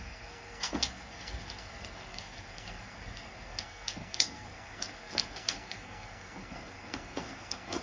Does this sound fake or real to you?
fake